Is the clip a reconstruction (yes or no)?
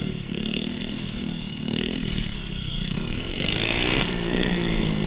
yes